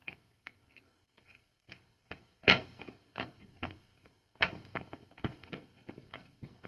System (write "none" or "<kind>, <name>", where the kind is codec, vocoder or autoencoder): codec, SNAC